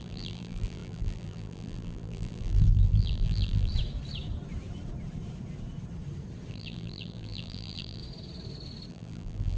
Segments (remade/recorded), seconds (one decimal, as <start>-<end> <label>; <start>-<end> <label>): 0.0-3.7 remade; 3.7-6.5 recorded; 6.5-8.0 remade; 8.0-8.9 recorded; 8.9-9.6 remade